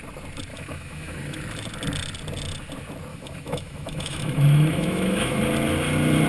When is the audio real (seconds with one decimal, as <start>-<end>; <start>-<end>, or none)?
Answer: 0.0-0.5; 1.4-3.1; 5.4-6.3